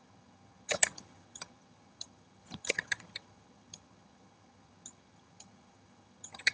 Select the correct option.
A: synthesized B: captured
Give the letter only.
A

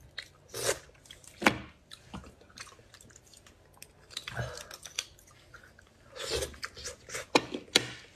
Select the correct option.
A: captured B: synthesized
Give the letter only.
A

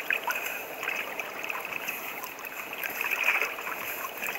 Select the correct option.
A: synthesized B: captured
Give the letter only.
A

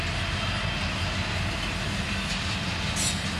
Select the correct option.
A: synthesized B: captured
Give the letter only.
B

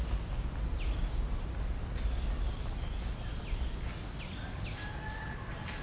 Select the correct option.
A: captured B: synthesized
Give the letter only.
A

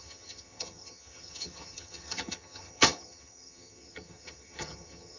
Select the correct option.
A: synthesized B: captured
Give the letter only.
A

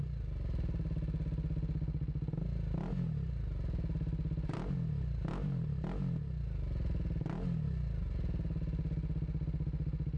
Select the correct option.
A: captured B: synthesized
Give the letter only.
A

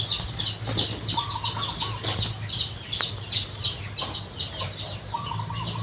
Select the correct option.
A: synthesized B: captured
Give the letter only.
B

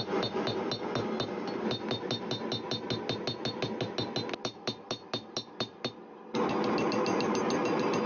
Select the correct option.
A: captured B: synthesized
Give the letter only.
A